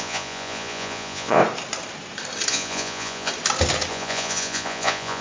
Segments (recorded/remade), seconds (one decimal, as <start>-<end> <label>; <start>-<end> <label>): 0.0-1.4 remade; 1.4-2.5 recorded; 2.5-3.3 remade; 3.3-3.9 recorded; 3.9-5.2 remade